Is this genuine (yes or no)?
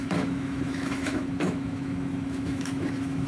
no